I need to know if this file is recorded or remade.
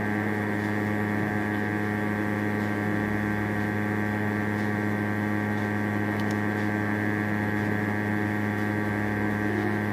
remade